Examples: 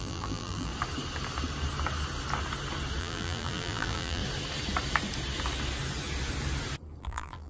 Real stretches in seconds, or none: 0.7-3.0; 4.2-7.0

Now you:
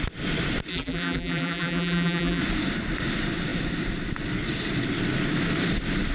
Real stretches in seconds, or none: 0.0-0.7; 2.4-6.1

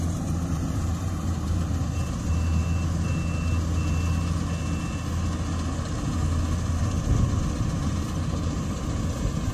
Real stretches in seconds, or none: 2.6-6.8

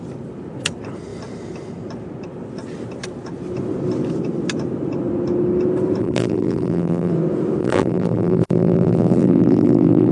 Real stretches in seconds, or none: 0.0-6.0; 7.1-7.6

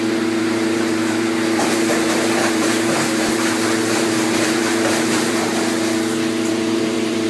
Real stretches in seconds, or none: 5.5-6.5

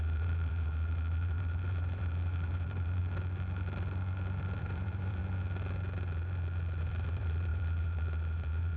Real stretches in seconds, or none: 3.0-4.6; 5.2-6.8